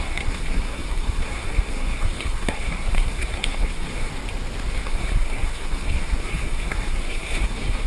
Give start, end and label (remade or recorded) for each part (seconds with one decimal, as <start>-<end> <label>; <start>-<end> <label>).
0.0-4.1 remade; 4.1-4.7 recorded; 4.7-7.9 remade